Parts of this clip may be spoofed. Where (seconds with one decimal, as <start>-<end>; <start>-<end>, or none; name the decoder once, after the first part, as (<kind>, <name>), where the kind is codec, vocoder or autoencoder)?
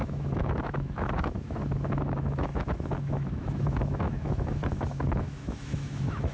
0.0-6.3 (autoencoder, DAC-VAE)